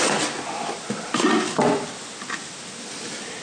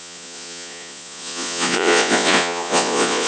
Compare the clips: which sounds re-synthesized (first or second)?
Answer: second